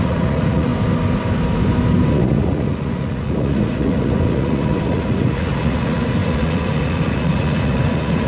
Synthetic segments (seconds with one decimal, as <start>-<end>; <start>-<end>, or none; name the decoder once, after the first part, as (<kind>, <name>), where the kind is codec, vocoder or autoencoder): 0.0-0.7 (vocoder, Vocos); 2.1-8.3